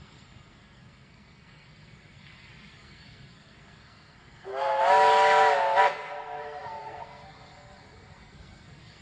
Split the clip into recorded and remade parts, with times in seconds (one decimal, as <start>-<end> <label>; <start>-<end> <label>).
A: 0.0-4.5 remade; 4.5-5.8 recorded; 5.8-9.0 remade